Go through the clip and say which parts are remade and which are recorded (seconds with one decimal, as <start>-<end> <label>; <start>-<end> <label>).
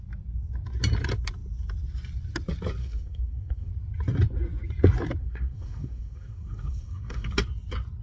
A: 0.0-2.8 recorded; 2.8-3.7 remade; 3.7-5.2 recorded; 5.2-7.3 remade; 7.3-8.0 recorded